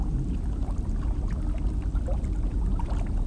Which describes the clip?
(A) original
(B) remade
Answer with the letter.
B